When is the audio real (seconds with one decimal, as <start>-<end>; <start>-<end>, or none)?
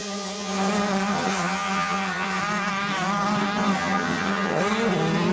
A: 0.7-1.1; 2.4-3.7; 4.6-5.3